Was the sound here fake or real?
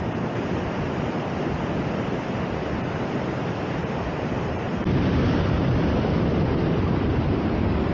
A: real